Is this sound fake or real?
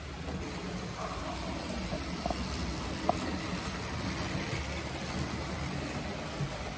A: real